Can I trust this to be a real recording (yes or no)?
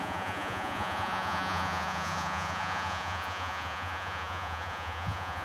no